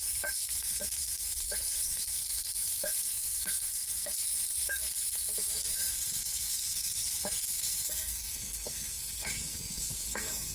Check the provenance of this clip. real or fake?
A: fake